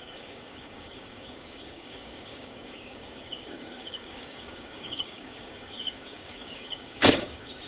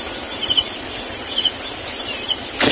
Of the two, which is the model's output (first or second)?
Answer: first